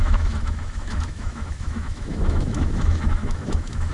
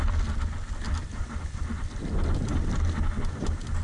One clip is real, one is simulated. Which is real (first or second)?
second